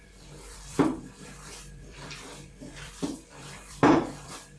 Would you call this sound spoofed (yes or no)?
yes